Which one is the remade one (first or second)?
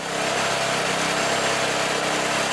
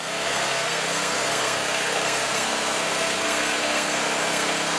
second